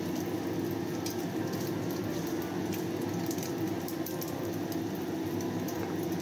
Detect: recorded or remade recorded